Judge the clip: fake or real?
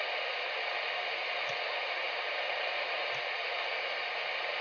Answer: real